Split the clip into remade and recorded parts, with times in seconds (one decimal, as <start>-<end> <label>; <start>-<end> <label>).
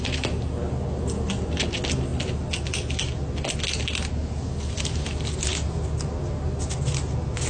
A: 0.0-7.5 recorded